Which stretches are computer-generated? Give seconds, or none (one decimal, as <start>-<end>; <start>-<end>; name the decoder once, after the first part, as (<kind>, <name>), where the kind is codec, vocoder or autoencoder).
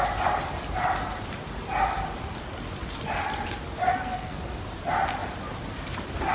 3.9-4.4 (codec, SNAC)